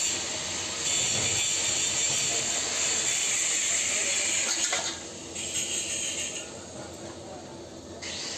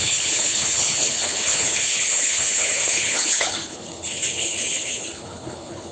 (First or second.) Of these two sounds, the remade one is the second